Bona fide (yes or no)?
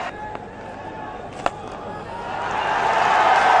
yes